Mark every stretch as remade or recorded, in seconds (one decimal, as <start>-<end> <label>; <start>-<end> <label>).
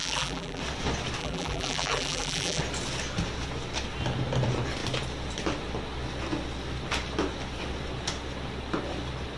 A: 0.0-0.6 remade; 0.6-1.2 recorded; 1.2-2.6 remade; 2.6-9.4 recorded